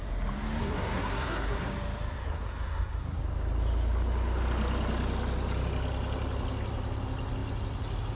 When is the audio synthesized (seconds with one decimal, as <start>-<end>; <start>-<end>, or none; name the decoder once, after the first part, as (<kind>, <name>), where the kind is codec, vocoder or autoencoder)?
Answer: 0.6-1.7 (codec, SNAC); 2.2-3.2